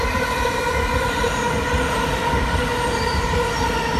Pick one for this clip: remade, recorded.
recorded